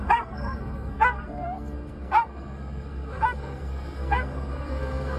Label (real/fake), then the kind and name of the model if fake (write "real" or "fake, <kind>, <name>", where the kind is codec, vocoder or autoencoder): fake, codec, SNAC